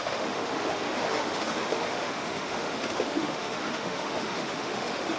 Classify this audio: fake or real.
fake